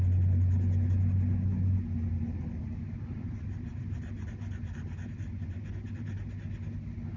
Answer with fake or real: real